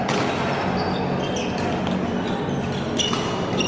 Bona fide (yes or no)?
yes